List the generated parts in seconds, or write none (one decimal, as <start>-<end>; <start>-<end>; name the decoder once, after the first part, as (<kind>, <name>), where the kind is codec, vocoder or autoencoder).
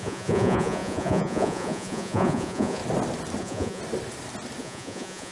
0.0-2.8 (vocoder, Vocos); 3.4-3.8; 4.6-5.3